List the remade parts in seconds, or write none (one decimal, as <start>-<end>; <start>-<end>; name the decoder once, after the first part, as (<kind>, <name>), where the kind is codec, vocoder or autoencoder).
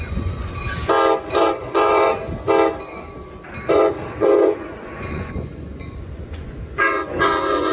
0.0-0.6 (vocoder, Vocos); 1.3-2.1; 3.7-7.7